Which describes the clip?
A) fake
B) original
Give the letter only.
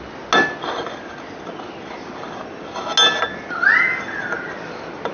B